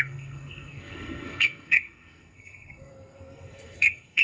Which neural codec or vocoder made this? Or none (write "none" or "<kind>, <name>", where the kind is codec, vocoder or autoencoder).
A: codec, SNAC